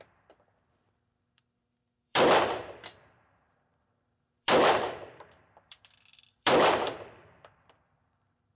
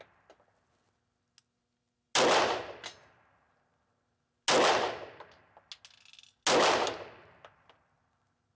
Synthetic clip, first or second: first